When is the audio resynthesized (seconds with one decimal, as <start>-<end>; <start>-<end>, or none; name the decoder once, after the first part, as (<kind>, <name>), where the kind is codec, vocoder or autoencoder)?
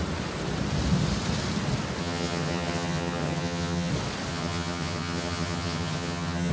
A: 2.0-3.9 (vocoder, HiFi-GAN); 4.3-6.5